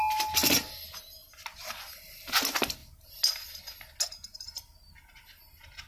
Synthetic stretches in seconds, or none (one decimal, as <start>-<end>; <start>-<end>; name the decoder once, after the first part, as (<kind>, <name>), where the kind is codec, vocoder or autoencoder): none